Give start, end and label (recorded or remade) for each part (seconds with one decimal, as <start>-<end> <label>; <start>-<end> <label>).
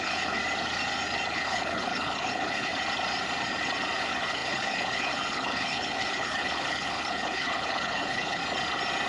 0.0-0.4 remade; 0.4-1.3 recorded; 1.3-2.7 remade; 2.7-4.0 recorded; 4.0-8.4 remade; 8.4-9.1 recorded